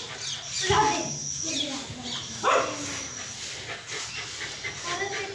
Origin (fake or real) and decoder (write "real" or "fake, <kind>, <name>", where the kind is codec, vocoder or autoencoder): real